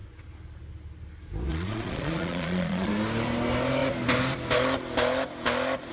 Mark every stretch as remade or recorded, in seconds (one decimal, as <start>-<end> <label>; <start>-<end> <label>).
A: 0.0-1.5 recorded; 1.5-2.9 remade; 2.9-5.9 recorded